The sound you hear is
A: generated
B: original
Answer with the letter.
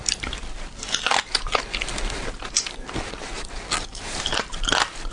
B